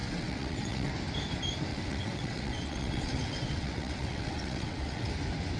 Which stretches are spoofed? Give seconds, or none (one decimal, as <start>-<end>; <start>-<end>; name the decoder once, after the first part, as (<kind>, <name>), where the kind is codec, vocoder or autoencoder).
0.0-0.9 (vocoder, WaveNeXt); 1.7-5.1

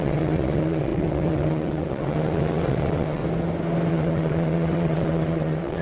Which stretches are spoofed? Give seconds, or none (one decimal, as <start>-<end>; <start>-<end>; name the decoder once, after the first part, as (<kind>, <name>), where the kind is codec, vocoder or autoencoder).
0.0-3.2 (vocoder, WaveNeXt); 3.9-5.8

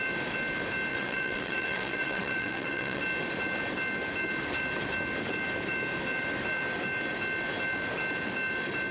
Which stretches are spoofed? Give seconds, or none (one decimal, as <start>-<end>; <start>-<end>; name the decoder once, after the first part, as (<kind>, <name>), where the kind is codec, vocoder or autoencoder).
0.9-3.0 (vocoder, WaveNeXt)

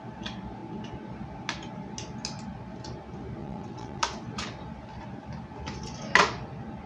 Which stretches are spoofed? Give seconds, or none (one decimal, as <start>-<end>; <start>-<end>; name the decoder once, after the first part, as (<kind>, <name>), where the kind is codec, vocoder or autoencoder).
3.4-4.0 (vocoder, WaveNeXt)